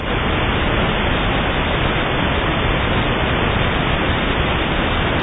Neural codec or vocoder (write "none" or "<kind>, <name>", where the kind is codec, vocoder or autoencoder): none